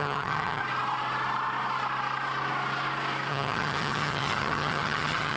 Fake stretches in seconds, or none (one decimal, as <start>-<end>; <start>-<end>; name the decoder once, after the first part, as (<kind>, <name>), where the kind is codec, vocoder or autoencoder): 0.0-0.6 (vocoder, HiFi-GAN); 3.3-5.4